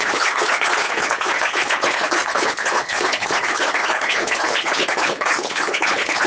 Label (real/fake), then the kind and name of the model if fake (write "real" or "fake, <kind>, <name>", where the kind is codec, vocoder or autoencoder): fake, codec, HILCodec